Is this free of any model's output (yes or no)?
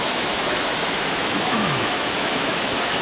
no